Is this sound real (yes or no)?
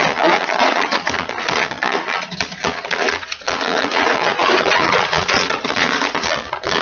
no